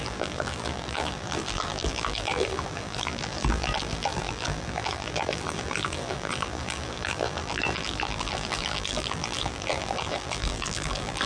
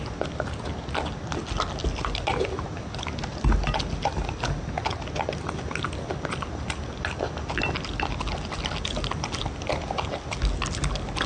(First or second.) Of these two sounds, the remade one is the first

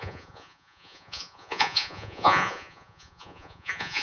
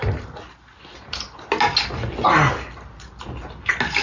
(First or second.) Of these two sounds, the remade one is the first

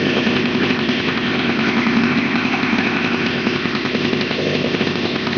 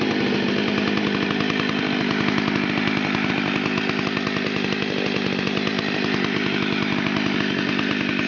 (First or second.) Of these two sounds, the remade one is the first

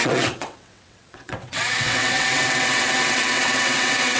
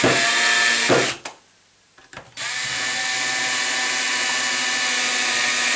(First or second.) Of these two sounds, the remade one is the first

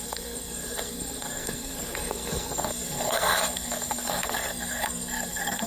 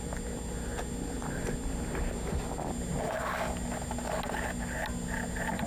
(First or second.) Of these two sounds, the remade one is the first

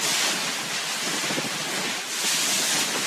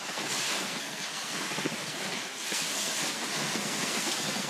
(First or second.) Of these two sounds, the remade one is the second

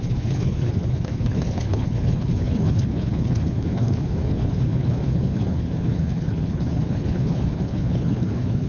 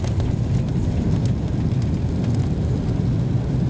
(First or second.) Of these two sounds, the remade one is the first